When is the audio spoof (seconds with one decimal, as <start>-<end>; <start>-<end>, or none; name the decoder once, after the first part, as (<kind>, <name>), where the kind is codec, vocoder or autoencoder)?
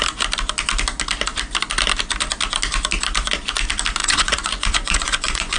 4.0-5.6 (vocoder, Vocos)